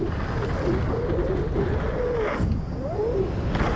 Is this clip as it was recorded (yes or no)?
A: yes